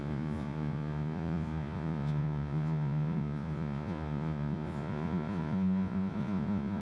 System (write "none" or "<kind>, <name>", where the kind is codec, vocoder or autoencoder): vocoder, Vocos